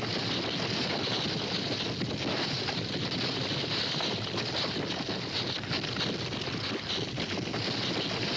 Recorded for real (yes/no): yes